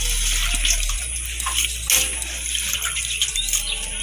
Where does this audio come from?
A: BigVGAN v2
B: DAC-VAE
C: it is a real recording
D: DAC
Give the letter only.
C